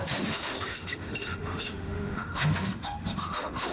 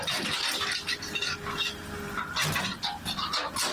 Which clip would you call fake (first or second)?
first